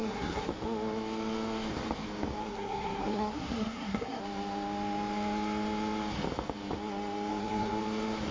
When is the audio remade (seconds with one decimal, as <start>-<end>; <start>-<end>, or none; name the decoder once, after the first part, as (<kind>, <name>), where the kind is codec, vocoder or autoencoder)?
0.0-0.5 (codec, SNAC); 2.4-4.2; 7.3-7.8